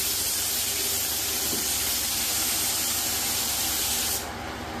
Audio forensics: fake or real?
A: real